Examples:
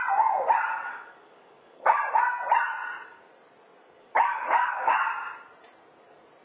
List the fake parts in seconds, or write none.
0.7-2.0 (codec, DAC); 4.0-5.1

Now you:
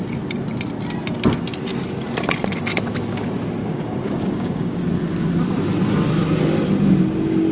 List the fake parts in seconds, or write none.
3.6-4.8 (codec, DAC)